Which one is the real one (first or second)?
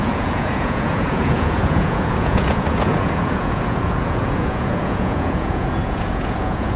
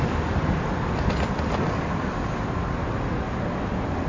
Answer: second